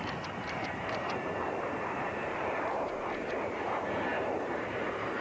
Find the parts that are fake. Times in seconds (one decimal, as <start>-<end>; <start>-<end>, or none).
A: 0.0-3.1; 4.1-5.2